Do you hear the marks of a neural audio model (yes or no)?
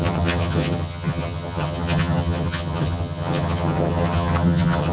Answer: yes